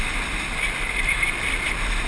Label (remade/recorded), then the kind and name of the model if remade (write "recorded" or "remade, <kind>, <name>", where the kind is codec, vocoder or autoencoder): remade, vocoder, BigVGAN v2